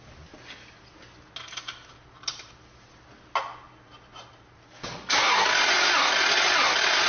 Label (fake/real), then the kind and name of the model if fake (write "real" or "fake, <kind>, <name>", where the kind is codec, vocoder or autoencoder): real